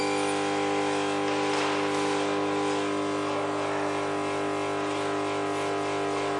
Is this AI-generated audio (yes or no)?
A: no